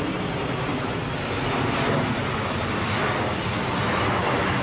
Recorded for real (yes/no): yes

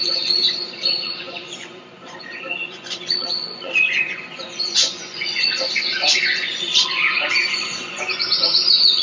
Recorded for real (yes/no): no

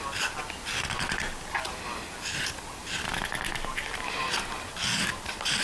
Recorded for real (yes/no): yes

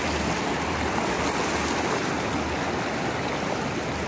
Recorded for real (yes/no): yes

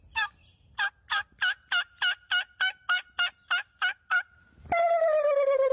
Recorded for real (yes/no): yes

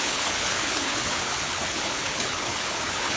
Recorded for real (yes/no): no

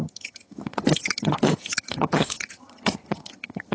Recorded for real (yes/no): no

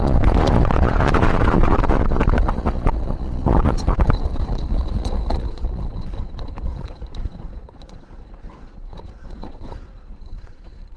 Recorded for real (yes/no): no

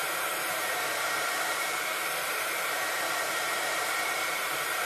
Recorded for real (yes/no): no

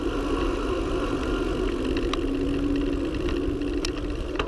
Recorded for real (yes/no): yes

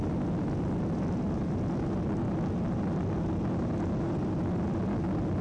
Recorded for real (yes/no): yes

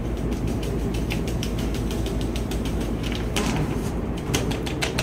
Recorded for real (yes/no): no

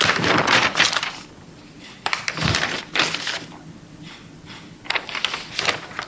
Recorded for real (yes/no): yes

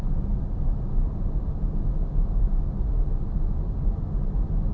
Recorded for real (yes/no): yes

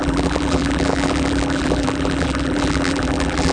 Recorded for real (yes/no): no